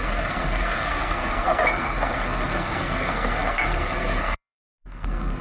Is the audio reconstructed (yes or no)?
yes